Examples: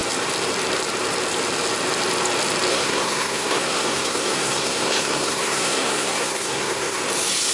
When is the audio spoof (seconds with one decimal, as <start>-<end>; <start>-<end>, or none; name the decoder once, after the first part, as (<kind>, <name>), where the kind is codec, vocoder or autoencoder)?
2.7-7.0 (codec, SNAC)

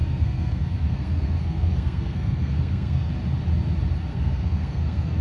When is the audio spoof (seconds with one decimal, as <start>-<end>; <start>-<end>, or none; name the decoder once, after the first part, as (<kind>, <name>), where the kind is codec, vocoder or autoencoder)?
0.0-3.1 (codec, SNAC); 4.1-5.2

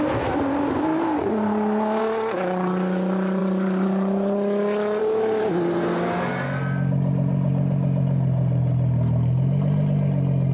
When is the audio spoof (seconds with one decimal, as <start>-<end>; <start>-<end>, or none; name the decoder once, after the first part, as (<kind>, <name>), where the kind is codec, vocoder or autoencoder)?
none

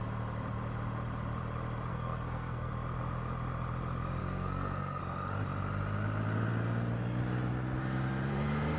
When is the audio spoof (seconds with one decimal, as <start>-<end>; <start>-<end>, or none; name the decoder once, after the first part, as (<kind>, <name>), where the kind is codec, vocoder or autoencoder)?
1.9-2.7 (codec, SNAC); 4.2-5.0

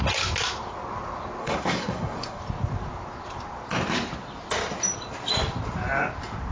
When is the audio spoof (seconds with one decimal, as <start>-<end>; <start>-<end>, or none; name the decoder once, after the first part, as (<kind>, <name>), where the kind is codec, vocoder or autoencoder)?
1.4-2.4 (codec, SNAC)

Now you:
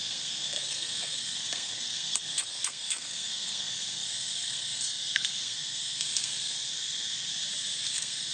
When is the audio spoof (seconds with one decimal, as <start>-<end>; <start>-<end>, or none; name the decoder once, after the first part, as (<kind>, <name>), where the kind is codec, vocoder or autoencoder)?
0.0-7.3 (codec, SNAC); 7.9-8.3

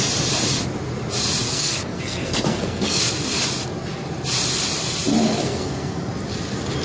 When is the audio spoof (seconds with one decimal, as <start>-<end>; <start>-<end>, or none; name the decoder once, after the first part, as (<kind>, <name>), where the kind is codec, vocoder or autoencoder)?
1.5-3.0 (codec, SNAC); 5.4-6.1